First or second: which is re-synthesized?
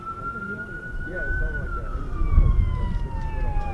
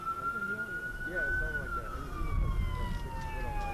first